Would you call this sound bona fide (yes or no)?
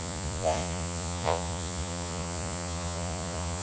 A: no